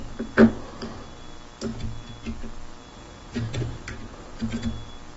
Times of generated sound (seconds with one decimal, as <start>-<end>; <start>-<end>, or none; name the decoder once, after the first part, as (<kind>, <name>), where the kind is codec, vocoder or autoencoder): 2.9-4.4 (vocoder, BigVGAN v2)